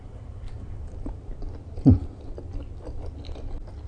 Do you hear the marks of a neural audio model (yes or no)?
no